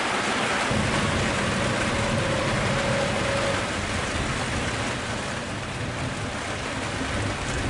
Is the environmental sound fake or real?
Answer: real